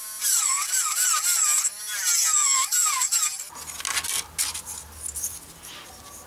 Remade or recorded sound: recorded